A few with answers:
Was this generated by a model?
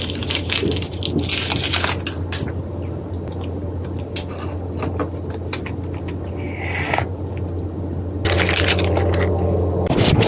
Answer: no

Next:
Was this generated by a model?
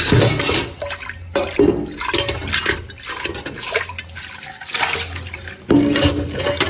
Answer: no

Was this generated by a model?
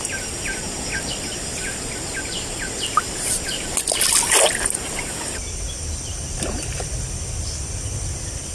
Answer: no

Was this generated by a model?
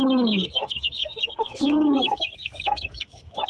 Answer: yes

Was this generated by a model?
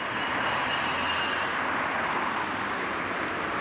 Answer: no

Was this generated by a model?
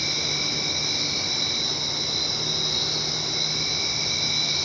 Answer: no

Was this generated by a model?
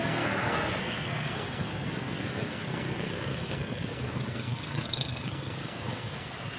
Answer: yes